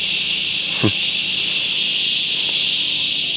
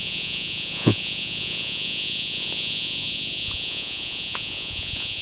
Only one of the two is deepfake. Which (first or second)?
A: second